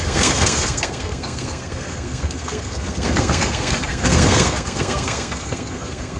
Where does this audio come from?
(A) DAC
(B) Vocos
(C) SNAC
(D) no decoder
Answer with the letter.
C